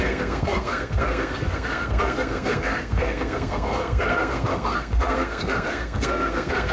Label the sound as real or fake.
fake